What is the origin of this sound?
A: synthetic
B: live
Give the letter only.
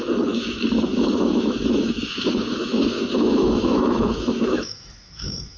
A